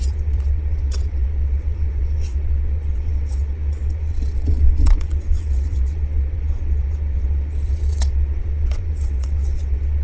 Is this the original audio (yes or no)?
no